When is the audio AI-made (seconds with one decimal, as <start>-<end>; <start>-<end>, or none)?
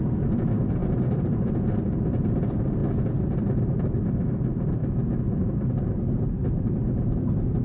0.0-7.6